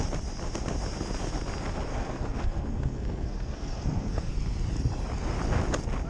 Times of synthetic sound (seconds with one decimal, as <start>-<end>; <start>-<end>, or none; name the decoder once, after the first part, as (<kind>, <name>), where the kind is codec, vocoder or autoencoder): 1.9-4.3 (codec, SNAC)